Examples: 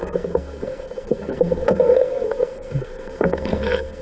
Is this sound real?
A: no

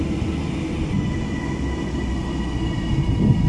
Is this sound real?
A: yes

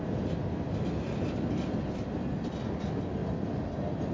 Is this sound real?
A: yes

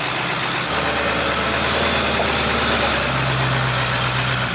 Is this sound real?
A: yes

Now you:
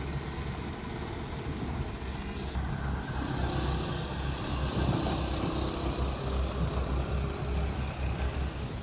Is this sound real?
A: yes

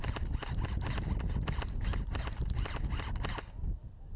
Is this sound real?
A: yes